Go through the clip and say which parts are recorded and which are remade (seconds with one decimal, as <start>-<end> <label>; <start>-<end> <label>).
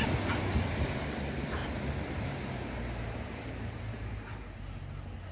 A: 0.0-1.6 recorded; 1.6-4.8 remade; 4.8-5.3 recorded